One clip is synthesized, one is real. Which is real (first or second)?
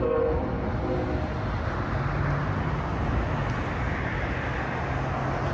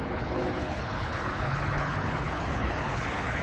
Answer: first